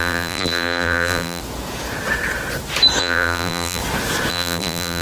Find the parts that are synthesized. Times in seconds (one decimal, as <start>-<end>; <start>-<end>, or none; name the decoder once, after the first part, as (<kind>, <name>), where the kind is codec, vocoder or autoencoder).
0.0-1.4 (vocoder, BigVGAN v2); 3.0-3.8; 4.3-5.0